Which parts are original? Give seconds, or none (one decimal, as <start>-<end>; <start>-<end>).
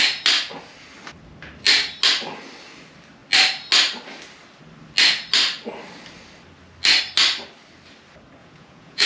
0.0-8.4